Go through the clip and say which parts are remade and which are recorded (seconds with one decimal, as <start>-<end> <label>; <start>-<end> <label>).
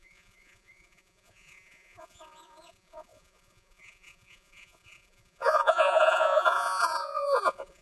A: 0.0-7.8 remade